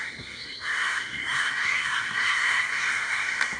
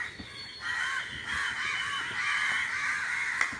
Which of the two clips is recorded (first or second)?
second